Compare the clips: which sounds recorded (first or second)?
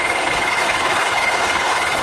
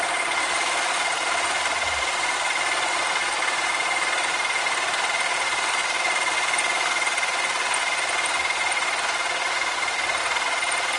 second